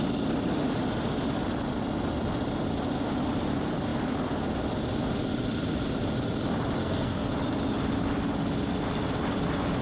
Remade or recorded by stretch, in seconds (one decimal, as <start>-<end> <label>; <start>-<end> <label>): 0.0-6.8 recorded; 6.8-7.3 remade; 7.3-9.8 recorded